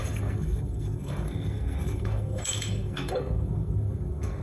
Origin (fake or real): fake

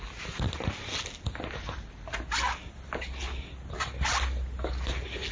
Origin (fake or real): real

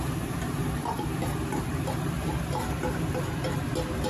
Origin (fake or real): real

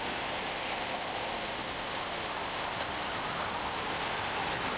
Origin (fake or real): real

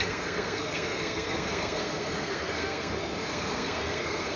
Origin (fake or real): fake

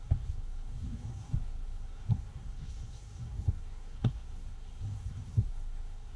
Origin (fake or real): fake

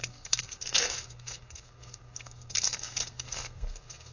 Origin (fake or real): fake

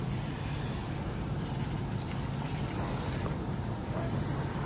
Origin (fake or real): real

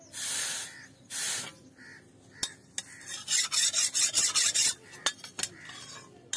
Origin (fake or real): real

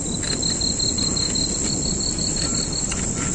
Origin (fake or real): real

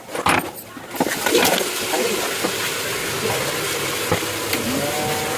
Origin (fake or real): real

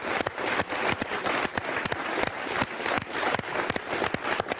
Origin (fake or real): real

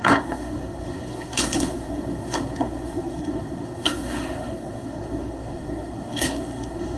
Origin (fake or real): fake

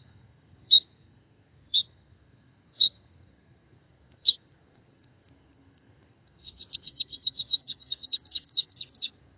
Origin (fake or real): fake